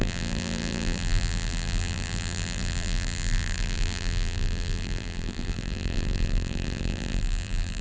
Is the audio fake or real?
fake